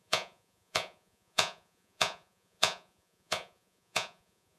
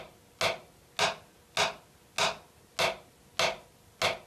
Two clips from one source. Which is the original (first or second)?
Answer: second